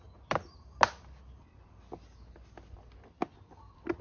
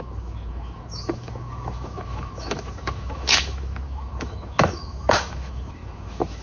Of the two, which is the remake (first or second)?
second